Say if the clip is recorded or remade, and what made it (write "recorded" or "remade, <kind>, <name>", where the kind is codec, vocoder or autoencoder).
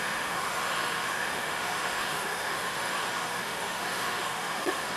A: remade, autoencoder, DAC-VAE